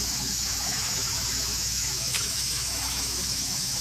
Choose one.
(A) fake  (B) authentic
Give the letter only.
A